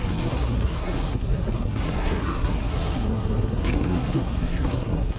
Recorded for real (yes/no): no